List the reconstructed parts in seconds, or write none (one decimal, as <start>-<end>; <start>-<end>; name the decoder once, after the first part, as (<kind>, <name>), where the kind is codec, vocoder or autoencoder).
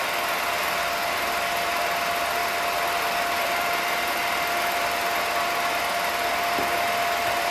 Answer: 2.4-3.7 (vocoder, BigVGAN v2)